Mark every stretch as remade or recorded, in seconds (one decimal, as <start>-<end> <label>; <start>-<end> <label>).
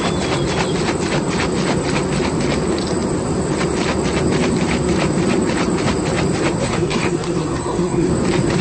0.0-6.6 recorded; 6.6-8.1 remade; 8.1-8.6 recorded